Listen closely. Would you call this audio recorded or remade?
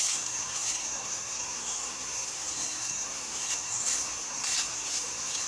remade